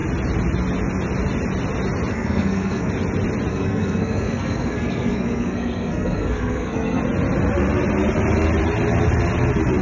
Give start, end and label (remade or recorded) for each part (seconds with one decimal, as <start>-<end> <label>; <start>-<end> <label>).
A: 0.0-2.1 recorded; 2.1-2.9 remade; 2.9-3.5 recorded; 3.5-7.0 remade; 7.0-9.8 recorded